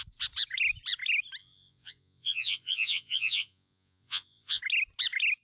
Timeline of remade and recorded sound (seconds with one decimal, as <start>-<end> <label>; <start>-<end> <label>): 0.0-1.4 recorded; 1.4-4.6 remade; 4.6-5.4 recorded